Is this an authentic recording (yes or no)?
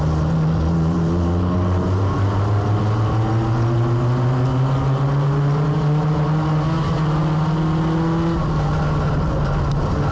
yes